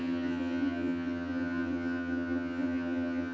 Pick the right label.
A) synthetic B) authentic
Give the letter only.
A